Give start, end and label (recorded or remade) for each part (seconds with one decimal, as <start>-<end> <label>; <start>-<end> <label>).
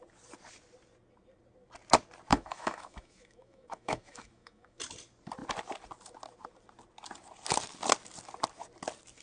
0.0-2.3 recorded; 2.3-4.8 remade; 4.8-9.2 recorded